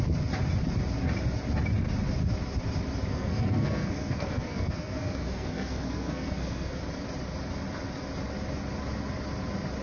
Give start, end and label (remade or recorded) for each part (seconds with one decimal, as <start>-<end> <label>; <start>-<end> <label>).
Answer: 0.0-3.1 recorded; 3.1-6.8 remade; 6.8-9.8 recorded